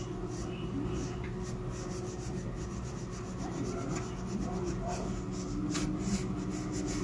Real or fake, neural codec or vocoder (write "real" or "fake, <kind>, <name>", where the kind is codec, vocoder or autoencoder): real